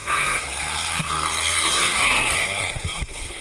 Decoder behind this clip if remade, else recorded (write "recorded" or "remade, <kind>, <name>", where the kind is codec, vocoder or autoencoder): remade, codec, SNAC